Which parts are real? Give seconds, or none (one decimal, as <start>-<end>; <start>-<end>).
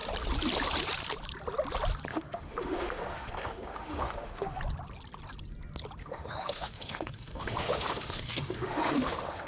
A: 0.0-2.1; 4.6-6.0